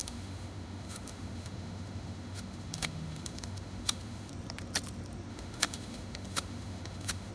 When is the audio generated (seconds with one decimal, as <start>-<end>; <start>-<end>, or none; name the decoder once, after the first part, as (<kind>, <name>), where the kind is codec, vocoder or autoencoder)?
0.0-4.3 (autoencoder, DAC-VAE); 5.3-7.3